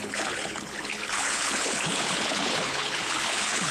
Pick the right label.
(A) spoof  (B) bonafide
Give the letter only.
A